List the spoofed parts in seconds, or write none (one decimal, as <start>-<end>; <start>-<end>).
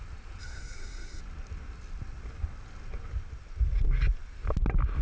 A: 0.4-1.2